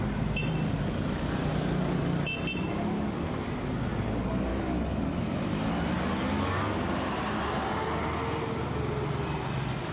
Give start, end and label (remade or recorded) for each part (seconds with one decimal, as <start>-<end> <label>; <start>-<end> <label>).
0.0-4.5 recorded; 4.5-5.4 remade; 5.4-9.9 recorded